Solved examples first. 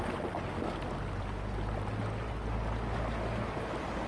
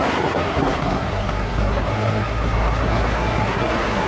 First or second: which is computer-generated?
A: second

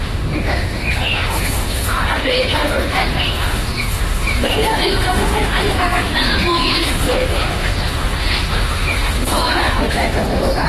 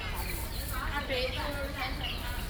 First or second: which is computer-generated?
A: first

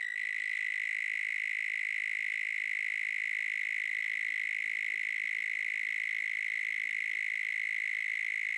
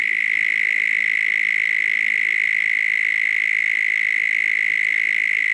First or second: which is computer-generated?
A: first